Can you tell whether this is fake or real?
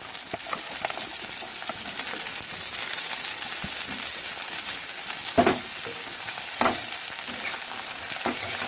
real